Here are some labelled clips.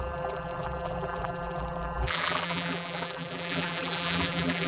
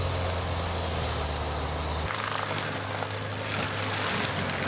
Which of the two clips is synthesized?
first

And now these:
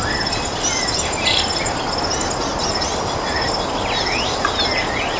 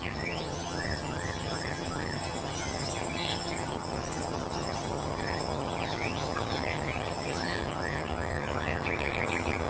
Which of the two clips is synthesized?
second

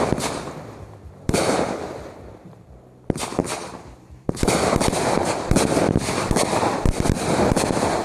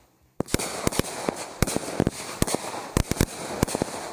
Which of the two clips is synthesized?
first